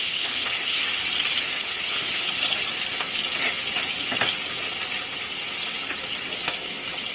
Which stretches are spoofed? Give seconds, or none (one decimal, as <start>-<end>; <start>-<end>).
0.0-0.8; 1.6-2.4